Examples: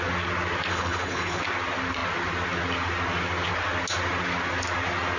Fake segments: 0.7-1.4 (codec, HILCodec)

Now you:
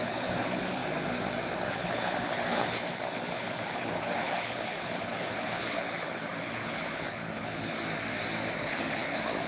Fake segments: 0.0-0.8 (codec, HILCodec); 1.7-7.7; 8.6-9.5

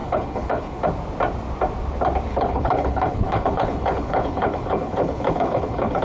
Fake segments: 0.0-0.8 (codec, HILCodec); 2.3-6.0

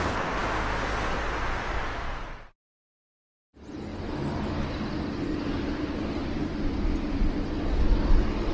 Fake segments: none

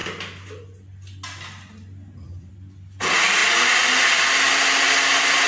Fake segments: none